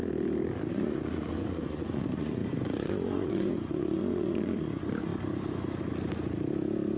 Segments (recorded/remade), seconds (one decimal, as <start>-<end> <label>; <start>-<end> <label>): 0.0-0.7 recorded; 0.7-5.1 remade; 5.1-7.0 recorded